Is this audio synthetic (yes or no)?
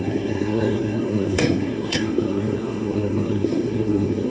yes